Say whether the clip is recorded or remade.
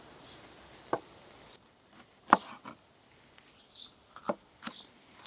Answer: remade